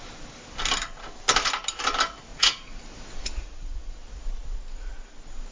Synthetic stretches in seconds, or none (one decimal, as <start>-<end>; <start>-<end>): 2.3-2.8; 3.2-4.0